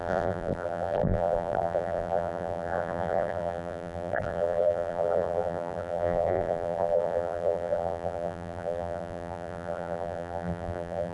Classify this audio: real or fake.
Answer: fake